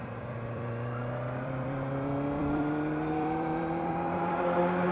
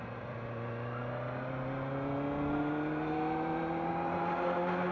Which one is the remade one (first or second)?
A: first